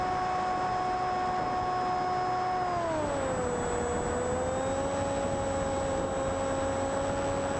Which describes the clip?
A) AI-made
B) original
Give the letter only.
B